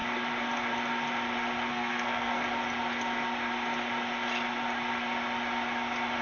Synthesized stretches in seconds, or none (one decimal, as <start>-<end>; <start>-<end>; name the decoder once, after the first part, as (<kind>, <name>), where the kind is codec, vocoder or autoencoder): 1.7-2.4 (codec, SNAC)